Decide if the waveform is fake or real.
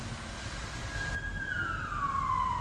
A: real